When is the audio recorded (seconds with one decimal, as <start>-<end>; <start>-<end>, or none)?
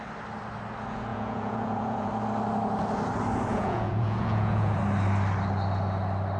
0.0-1.1; 2.1-3.5; 4.8-6.4